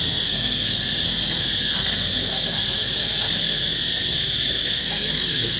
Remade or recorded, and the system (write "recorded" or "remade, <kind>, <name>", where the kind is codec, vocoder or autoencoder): remade, codec, SNAC